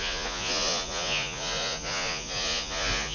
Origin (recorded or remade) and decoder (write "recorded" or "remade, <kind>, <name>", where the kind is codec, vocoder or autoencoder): remade, vocoder, Vocos